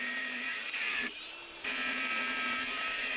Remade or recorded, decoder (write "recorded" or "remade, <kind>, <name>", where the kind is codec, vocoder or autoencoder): remade, vocoder, BigVGAN v2